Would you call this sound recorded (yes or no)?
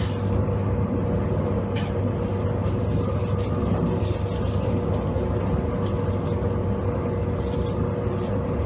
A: yes